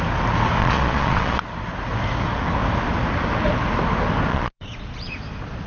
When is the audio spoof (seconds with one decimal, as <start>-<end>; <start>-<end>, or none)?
0.6-1.4; 4.3-5.1